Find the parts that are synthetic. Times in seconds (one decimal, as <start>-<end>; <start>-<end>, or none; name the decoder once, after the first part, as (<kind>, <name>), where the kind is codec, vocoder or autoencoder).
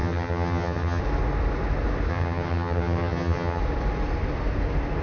0.0-1.0 (vocoder, HiFi-GAN); 2.1-3.6